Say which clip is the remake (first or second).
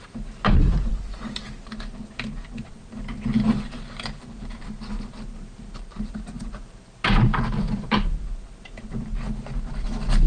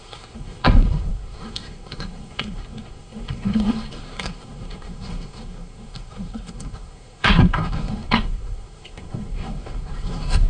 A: second